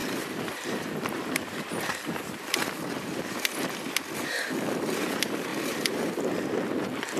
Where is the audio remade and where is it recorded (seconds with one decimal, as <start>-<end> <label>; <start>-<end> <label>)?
0.0-2.7 remade; 2.7-5.5 recorded; 5.5-6.1 remade; 6.1-7.2 recorded